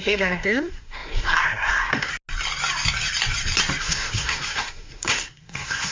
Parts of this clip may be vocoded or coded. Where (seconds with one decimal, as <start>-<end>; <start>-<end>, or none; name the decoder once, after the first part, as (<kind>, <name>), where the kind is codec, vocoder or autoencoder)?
0.0-2.1 (codec, SNAC); 3.8-5.9